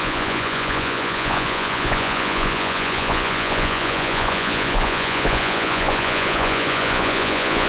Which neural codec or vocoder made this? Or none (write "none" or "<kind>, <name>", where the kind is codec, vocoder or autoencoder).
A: vocoder, Vocos